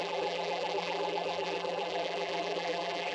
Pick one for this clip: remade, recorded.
remade